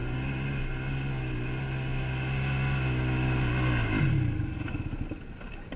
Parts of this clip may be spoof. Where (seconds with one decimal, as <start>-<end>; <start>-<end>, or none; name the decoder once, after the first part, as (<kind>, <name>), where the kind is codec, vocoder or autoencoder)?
none